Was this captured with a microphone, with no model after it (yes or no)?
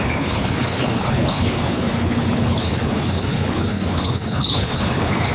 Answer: no